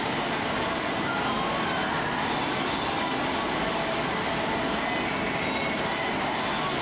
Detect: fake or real real